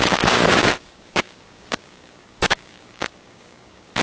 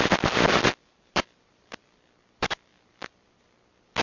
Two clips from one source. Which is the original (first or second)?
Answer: second